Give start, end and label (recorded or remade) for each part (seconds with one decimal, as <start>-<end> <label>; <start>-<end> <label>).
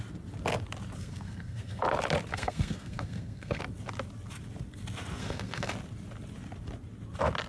0.0-1.0 recorded; 1.0-1.8 remade; 1.8-2.3 recorded; 2.3-3.6 remade; 3.6-5.2 recorded; 5.2-5.7 remade; 5.7-7.5 recorded